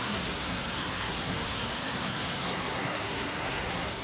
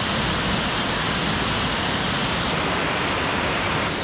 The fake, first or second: first